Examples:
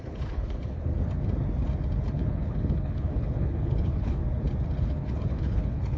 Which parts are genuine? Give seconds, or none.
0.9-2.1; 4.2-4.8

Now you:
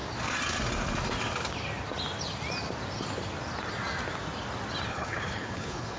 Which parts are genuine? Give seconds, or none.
0.0-4.9

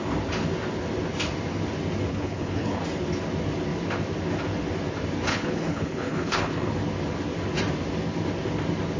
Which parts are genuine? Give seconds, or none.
0.0-2.1; 2.8-5.3; 6.7-9.0

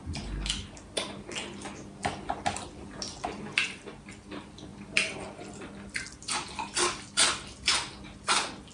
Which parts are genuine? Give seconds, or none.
0.0-8.7

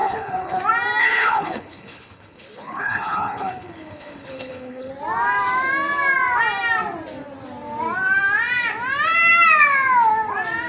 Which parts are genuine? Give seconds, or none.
0.6-1.0; 4.9-10.7

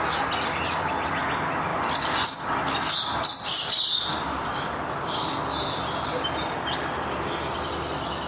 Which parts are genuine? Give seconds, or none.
0.0-8.3

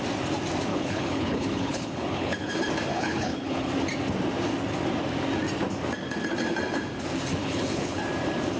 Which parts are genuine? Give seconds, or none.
0.0-0.7; 2.5-2.9; 3.7-7.4; 8.0-8.6